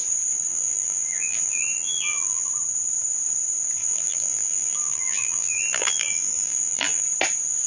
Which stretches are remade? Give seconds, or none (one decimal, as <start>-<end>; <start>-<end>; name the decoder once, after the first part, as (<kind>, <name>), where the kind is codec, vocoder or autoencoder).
0.5-2.5 (vocoder, BigVGAN v2); 3.8-7.0